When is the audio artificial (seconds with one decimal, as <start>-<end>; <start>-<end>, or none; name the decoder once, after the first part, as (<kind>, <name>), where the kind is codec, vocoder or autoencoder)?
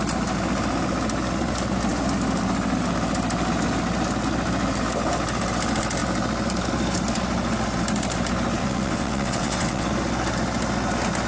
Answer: 8.6-9.9 (vocoder, WaveNeXt)